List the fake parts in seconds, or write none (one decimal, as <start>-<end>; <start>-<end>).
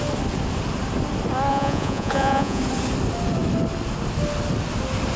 1.5-2.6